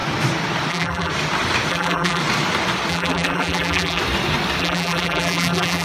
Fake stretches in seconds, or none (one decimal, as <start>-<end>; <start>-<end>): 0.7-1.1; 1.7-2.2; 2.9-4.0; 4.6-5.8